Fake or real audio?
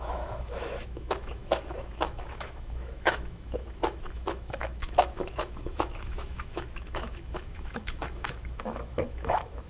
fake